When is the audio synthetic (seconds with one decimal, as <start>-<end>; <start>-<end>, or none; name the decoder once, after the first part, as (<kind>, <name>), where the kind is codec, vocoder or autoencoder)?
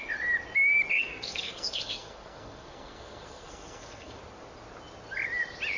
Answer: 0.9-4.2 (codec, SNAC)